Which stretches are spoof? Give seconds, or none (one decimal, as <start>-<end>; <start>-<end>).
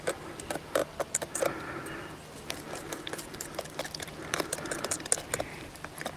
5.5-6.2